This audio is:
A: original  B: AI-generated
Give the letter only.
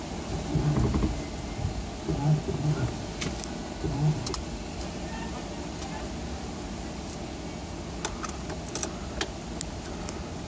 A